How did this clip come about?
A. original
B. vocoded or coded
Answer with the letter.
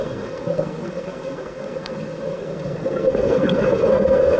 B